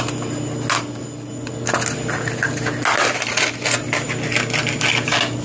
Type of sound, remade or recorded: recorded